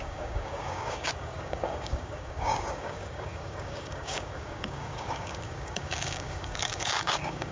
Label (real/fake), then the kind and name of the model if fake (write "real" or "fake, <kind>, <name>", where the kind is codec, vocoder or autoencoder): fake, codec, DAC